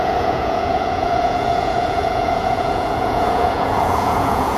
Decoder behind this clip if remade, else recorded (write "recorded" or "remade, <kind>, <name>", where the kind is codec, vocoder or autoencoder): remade, vocoder, Vocos